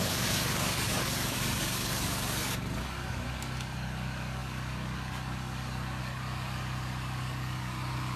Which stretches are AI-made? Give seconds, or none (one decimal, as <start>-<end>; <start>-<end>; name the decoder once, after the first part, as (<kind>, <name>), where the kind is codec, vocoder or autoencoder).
0.0-8.2 (codec, DAC)